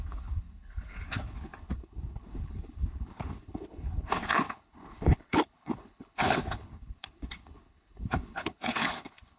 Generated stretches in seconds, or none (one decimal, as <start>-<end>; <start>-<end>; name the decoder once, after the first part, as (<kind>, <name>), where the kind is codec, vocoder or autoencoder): 0.0-9.4 (codec, HILCodec)